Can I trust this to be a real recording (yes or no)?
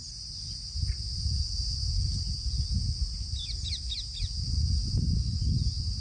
yes